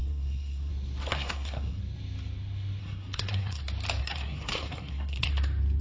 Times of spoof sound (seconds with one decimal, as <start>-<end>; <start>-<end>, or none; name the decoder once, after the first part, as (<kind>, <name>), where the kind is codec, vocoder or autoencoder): 0.0-0.7 (codec, SNAC); 1.1-1.8; 2.8-3.6; 4.0-5.3